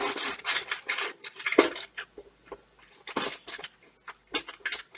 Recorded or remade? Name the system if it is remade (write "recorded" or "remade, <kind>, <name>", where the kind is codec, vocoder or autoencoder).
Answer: recorded